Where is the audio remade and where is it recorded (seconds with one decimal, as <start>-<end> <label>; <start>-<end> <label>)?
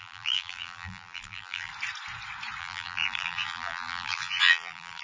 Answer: 0.0-1.7 remade; 1.7-2.6 recorded; 2.6-5.0 remade